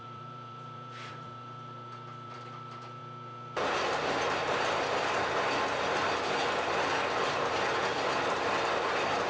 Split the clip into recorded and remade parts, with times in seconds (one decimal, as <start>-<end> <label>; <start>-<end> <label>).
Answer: 0.0-3.0 remade; 3.0-7.5 recorded; 7.5-9.3 remade